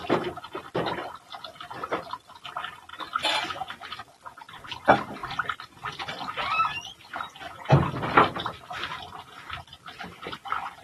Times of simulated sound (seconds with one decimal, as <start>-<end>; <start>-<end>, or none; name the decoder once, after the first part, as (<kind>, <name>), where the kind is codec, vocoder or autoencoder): none